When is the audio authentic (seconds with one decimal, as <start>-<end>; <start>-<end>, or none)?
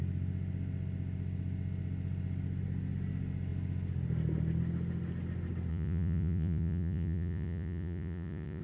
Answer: 0.0-5.7